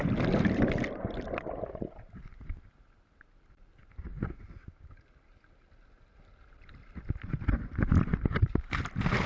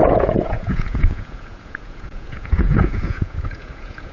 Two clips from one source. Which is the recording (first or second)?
first